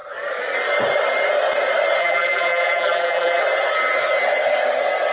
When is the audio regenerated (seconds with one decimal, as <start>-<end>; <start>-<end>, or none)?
2.0-3.4